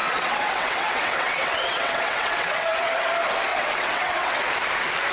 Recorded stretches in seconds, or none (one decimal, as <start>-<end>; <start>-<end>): 3.1-3.5; 4.4-5.1